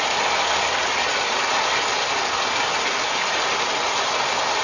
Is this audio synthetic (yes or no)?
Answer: no